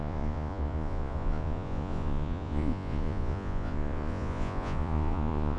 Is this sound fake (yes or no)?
yes